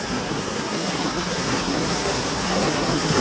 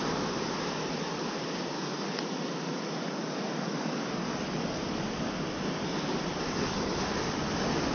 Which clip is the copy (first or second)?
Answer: first